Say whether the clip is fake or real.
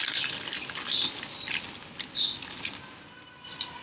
real